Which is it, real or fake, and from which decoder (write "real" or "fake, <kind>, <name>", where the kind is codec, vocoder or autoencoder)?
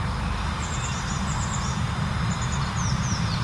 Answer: real